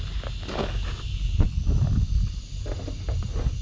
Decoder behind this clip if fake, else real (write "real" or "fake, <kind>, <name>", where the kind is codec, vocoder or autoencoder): real